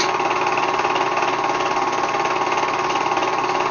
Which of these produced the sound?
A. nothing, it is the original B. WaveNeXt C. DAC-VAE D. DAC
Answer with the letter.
A